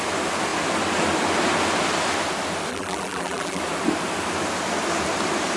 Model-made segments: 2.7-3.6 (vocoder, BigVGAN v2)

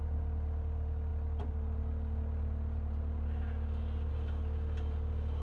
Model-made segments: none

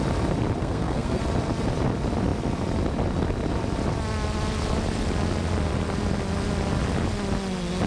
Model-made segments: 0.6-1.2 (codec, SNAC)